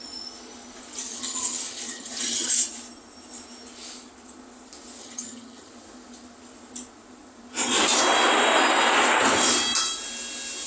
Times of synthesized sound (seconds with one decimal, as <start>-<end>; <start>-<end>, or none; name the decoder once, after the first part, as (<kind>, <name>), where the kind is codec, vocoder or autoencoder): 1.1-2.5 (vocoder, HiFi-GAN); 5.0-5.7